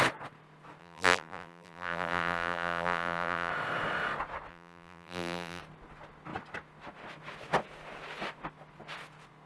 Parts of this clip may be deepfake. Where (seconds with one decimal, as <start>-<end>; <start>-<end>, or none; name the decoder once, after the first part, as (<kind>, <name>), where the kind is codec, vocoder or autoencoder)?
0.8-3.5 (vocoder, BigVGAN v2); 4.5-5.6